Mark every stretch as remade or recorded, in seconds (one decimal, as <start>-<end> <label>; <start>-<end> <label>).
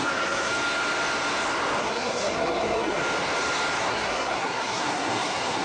0.0-0.5 remade; 0.5-1.8 recorded; 1.8-3.0 remade; 3.0-3.8 recorded; 3.8-5.6 remade